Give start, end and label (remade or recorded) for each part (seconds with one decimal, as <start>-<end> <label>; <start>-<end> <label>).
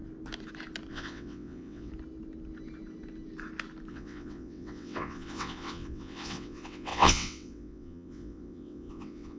0.0-0.9 recorded; 0.9-1.9 remade; 1.9-3.9 recorded; 3.9-9.4 remade